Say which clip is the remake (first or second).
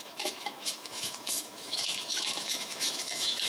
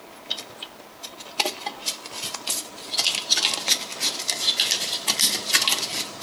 first